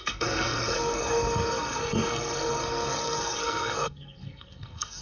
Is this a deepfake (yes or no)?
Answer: yes